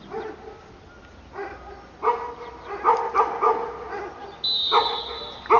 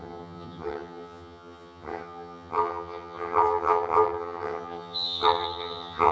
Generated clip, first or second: second